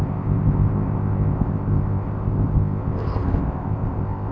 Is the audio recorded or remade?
remade